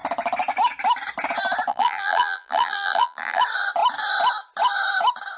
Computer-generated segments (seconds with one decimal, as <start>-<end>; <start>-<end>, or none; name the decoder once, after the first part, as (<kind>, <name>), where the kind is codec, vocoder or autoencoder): 1.7-3.4 (vocoder, BigVGAN v2)